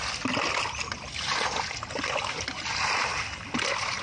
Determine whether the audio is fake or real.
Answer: real